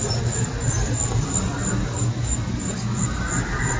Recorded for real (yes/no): yes